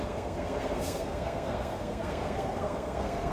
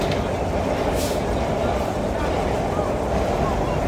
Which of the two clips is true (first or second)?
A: second